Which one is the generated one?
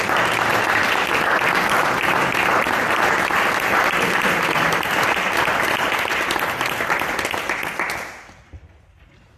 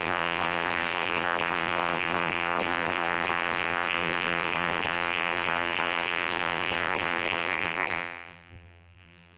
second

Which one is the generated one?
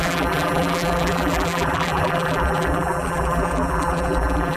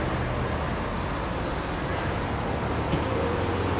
first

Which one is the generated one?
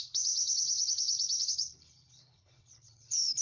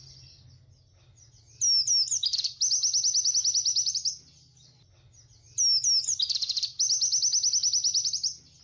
first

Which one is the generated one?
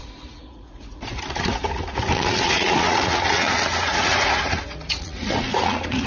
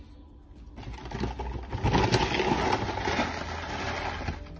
first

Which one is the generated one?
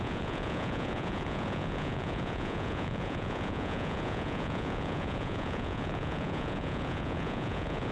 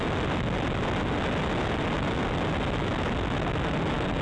first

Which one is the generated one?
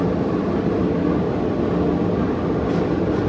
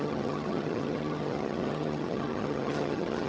second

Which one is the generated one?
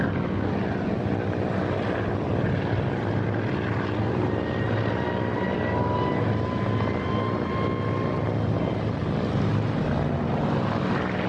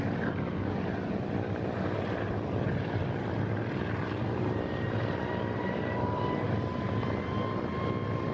second